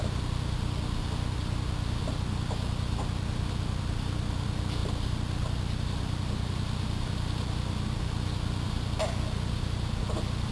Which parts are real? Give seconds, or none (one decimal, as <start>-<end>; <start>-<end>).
0.0-10.5